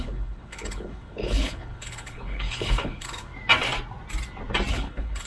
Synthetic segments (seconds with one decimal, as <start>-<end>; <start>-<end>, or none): 0.0-3.3; 4.7-5.3